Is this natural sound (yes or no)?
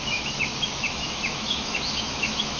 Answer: no